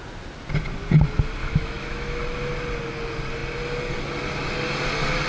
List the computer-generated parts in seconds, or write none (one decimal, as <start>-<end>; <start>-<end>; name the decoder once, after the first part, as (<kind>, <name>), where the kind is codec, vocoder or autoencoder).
1.4-2.2 (autoencoder, DAC-VAE)